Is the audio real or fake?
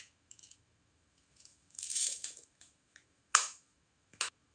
fake